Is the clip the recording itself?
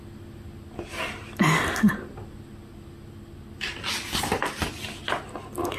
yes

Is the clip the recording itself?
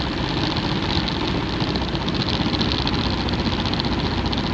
yes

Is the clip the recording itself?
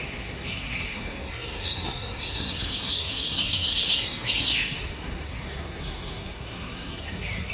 no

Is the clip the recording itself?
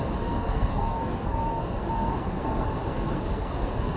no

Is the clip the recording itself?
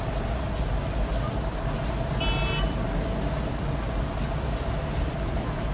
yes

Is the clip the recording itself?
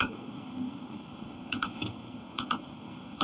no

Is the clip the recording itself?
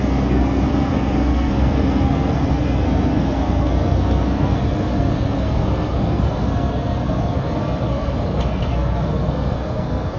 no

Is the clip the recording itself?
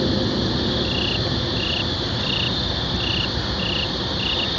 yes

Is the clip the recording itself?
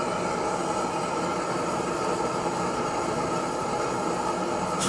yes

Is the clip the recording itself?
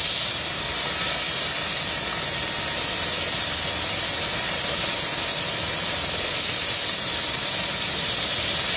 yes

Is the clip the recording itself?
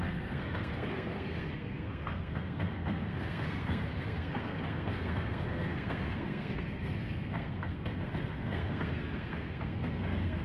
no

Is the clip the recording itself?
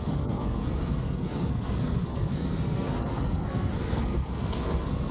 no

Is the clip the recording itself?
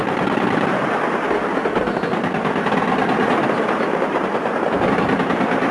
yes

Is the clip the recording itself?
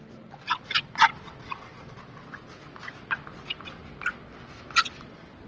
yes